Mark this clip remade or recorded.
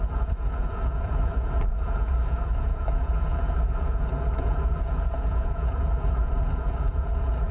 remade